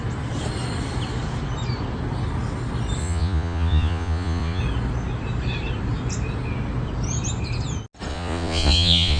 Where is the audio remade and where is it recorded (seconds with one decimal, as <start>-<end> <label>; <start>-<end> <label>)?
0.0-3.0 recorded; 3.0-4.6 remade; 4.6-8.1 recorded; 8.1-9.2 remade